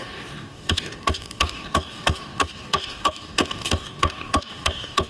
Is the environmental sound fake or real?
fake